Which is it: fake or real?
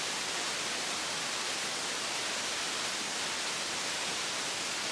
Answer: real